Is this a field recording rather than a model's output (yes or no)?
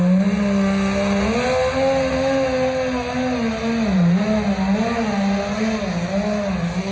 yes